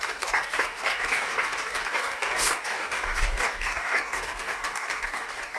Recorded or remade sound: remade